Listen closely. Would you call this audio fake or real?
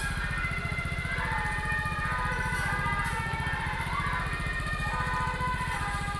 real